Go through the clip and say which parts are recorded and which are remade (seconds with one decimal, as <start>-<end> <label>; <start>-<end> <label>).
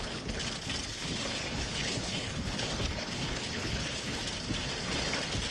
0.0-0.4 remade; 0.4-0.9 recorded; 0.9-4.2 remade; 4.2-5.5 recorded